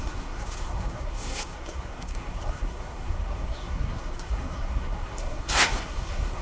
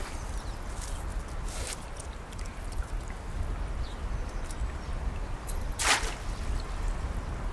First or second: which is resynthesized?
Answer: first